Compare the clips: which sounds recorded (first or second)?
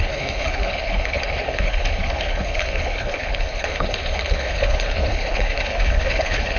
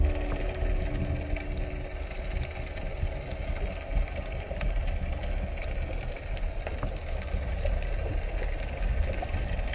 second